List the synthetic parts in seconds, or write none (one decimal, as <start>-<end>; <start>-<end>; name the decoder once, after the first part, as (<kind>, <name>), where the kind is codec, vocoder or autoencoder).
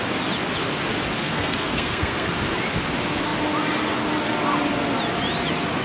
1.2-2.3 (codec, SNAC)